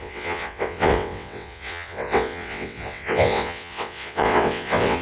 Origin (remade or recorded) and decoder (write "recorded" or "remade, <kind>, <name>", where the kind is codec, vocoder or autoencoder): remade, vocoder, WaveNeXt